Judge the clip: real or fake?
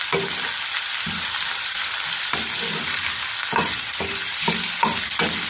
real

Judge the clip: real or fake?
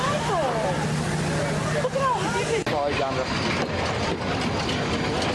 real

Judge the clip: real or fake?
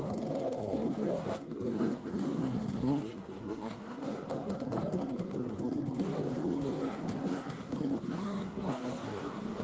fake